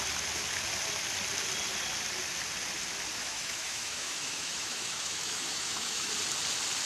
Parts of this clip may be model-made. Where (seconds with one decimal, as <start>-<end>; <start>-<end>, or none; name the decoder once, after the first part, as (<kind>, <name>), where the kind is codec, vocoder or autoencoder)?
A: 3.2-6.1 (autoencoder, DAC-VAE)